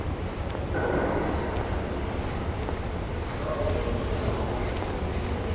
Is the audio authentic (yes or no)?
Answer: no